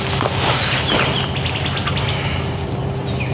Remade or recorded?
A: recorded